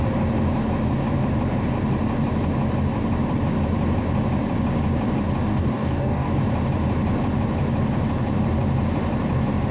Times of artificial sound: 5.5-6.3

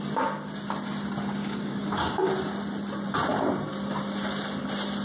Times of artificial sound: 1.4-2.3

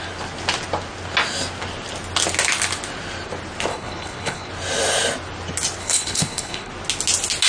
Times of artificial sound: 3.7-4.5; 5.8-6.7

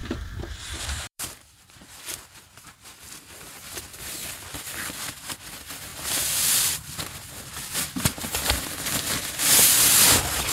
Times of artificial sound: 0.0-1.6

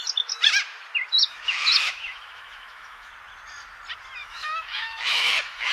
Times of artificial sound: 1.2-3.1; 4.2-5.7

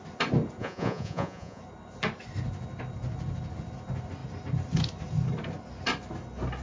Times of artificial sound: 0.6-1.6

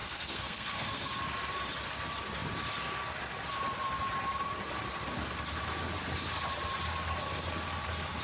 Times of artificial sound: 0.0-1.1